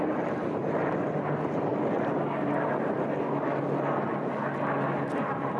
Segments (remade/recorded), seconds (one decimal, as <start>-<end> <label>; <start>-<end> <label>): 0.0-1.7 remade; 1.7-5.1 recorded; 5.1-5.6 remade